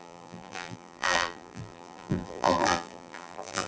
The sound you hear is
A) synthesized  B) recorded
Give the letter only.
A